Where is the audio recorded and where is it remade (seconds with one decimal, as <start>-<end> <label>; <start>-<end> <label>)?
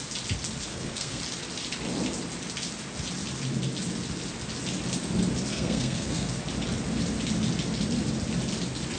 0.0-0.7 recorded; 0.7-1.2 remade; 1.2-5.5 recorded; 5.5-6.4 remade; 6.4-9.0 recorded